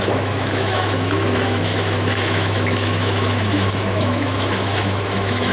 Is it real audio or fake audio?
fake